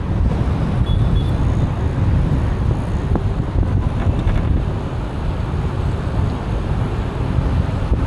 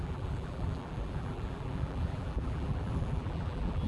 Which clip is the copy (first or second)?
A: second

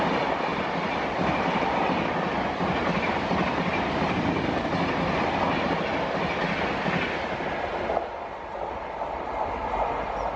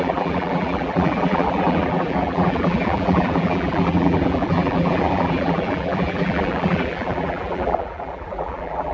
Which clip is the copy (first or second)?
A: second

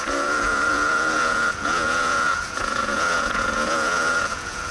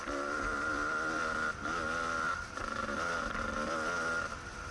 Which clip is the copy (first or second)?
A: first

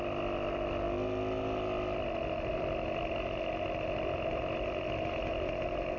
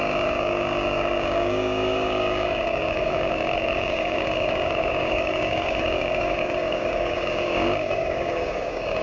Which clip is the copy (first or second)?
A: second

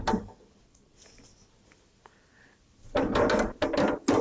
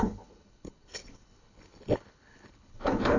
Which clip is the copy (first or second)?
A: second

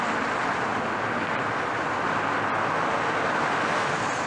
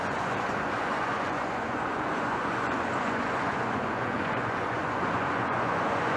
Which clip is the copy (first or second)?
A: second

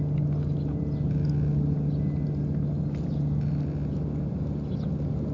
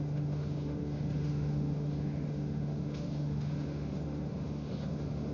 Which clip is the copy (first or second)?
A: second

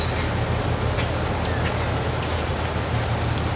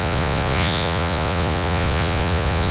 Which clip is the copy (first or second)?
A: second